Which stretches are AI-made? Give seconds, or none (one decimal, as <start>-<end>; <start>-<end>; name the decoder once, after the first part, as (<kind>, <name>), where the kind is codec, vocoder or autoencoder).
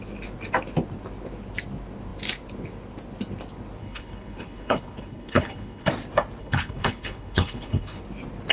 3.8-5.9 (codec, HILCodec); 6.4-8.0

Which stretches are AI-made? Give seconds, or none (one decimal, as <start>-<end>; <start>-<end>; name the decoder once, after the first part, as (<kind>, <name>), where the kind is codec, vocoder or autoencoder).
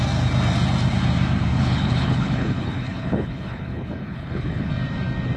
1.5-4.7 (codec, HILCodec)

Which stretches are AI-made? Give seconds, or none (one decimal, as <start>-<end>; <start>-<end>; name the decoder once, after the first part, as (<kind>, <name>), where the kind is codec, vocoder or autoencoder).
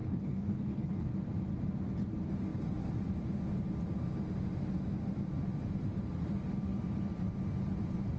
0.0-1.1 (codec, HILCodec)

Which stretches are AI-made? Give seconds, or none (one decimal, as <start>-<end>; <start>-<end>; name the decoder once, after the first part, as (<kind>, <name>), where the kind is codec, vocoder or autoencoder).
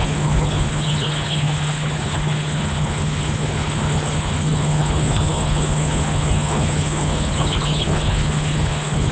0.0-9.1 (codec, HILCodec)